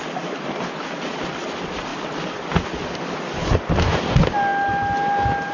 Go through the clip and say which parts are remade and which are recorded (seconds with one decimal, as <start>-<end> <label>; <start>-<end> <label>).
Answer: 0.0-5.5 recorded